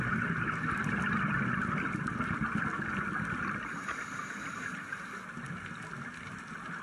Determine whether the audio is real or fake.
real